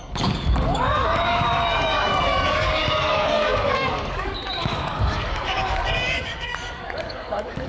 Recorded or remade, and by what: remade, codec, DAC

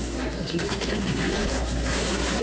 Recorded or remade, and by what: remade, codec, SNAC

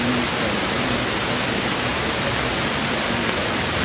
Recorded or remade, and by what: recorded